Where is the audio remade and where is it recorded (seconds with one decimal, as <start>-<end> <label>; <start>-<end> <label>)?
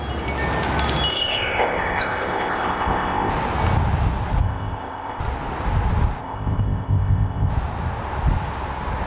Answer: 0.0-1.1 recorded; 1.1-3.3 remade; 3.3-4.4 recorded; 4.4-5.2 remade; 5.2-6.2 recorded; 6.2-7.5 remade; 7.5-9.1 recorded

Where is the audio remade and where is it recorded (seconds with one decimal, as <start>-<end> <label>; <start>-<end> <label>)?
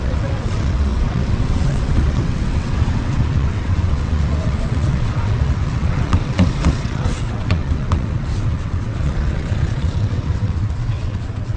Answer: 0.0-11.6 remade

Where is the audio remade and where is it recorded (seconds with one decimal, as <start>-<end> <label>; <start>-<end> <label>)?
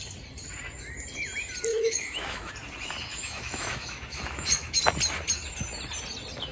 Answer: 0.0-1.7 recorded; 1.7-2.5 remade; 2.5-3.1 recorded; 3.1-4.8 remade; 4.8-6.5 recorded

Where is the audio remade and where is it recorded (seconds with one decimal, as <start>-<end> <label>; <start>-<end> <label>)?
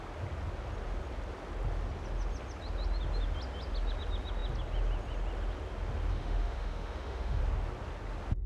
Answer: 0.0-6.1 recorded; 6.1-7.4 remade; 7.4-8.5 recorded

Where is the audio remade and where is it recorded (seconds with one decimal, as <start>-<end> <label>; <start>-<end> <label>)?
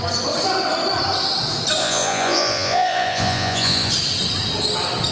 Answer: 0.0-1.8 recorded; 1.8-3.9 remade; 3.9-5.1 recorded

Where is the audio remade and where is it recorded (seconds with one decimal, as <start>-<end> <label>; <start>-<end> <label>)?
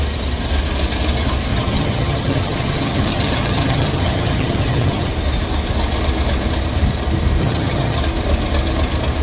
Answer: 0.0-1.5 recorded; 1.5-5.1 remade; 5.1-7.4 recorded; 7.4-8.0 remade; 8.0-9.2 recorded